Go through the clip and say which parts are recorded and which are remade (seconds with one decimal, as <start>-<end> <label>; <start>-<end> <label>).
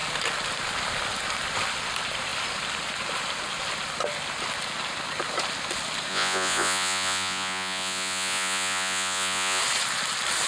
0.0-6.1 recorded; 6.1-9.6 remade; 9.6-10.5 recorded